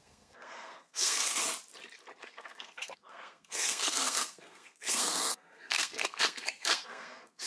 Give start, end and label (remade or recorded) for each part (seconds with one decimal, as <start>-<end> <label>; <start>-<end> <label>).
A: 0.0-1.4 remade; 1.4-2.2 recorded; 2.2-7.5 remade